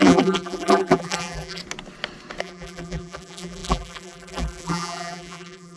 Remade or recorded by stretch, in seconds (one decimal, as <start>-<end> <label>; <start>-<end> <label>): 0.0-1.6 remade; 1.6-2.4 recorded; 2.4-5.8 remade